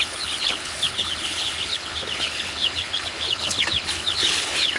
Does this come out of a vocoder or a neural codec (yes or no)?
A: yes